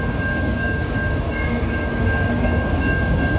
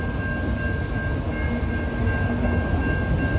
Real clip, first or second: second